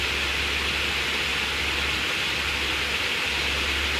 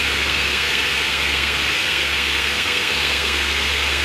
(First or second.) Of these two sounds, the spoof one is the second